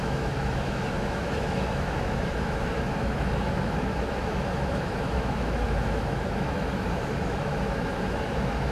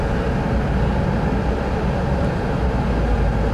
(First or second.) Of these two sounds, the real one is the second